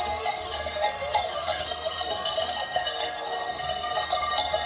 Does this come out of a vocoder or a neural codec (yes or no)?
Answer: yes